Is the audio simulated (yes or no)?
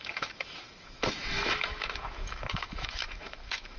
yes